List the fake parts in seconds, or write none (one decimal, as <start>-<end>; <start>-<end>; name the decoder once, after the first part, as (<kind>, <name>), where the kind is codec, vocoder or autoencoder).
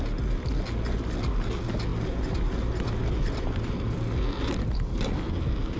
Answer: none